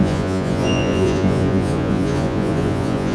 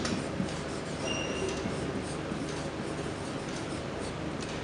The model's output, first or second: first